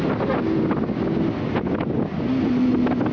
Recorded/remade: recorded